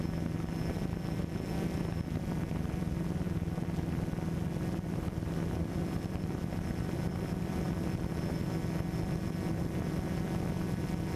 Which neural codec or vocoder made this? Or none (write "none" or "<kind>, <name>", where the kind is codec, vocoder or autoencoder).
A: none